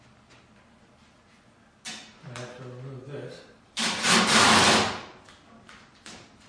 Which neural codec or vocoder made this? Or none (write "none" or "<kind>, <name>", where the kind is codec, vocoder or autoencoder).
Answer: none